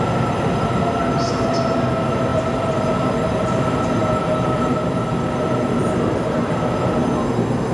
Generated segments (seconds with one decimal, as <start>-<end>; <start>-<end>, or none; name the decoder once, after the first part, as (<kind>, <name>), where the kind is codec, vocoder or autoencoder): 2.3-2.9 (vocoder, BigVGAN v2); 4.0-6.8